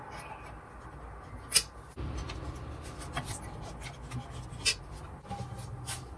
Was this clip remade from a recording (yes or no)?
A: no